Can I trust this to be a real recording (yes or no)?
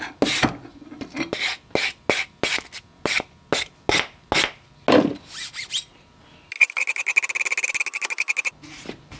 yes